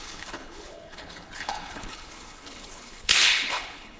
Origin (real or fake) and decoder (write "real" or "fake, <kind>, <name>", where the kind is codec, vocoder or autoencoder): fake, codec, HILCodec